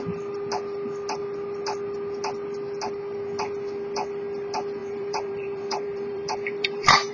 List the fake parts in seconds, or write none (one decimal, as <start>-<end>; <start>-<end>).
4.8-7.1